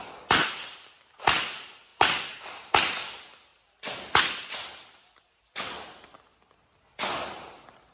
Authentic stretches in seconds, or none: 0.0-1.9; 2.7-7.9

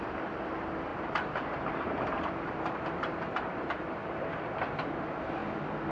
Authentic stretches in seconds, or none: 5.4-5.9

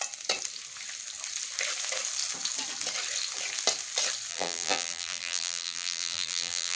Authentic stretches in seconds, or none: 0.0-4.3

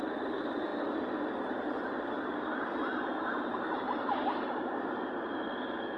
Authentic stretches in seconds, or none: 0.0-3.1; 3.7-6.0

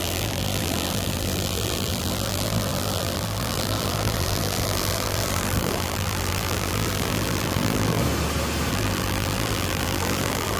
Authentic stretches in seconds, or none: 8.0-8.7

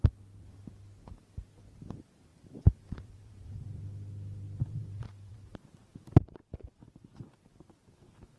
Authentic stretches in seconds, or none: 0.0-2.3; 3.6-4.6; 5.5-8.4

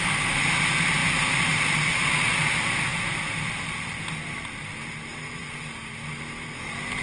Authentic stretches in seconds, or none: 0.0-7.0